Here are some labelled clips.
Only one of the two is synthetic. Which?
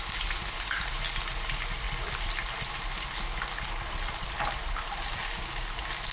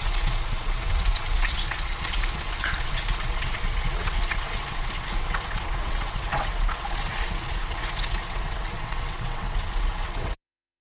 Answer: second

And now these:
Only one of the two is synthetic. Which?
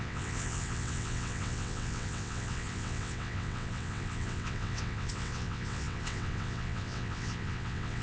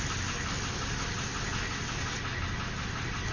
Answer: first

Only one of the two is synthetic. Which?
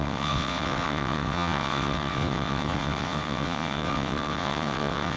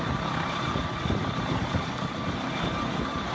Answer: first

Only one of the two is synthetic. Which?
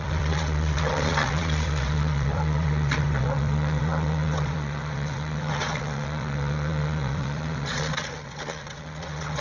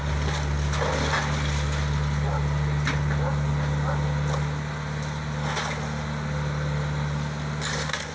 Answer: first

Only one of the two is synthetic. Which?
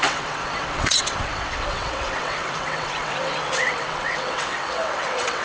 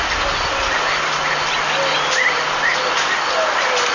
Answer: first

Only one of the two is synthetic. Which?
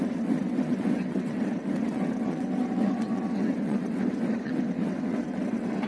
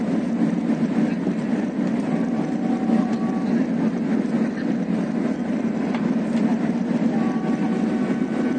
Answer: first